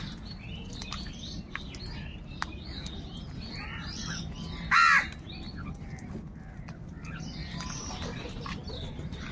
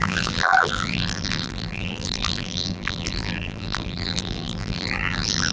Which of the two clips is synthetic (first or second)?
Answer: second